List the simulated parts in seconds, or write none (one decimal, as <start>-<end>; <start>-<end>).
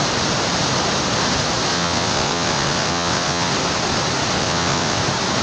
1.7-3.5; 4.4-5.0